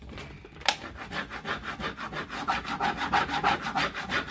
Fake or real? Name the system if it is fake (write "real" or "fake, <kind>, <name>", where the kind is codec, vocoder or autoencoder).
real